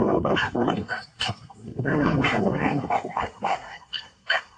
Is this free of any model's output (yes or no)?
no